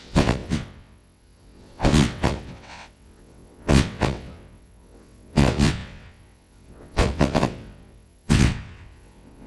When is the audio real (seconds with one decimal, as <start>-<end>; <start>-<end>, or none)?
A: none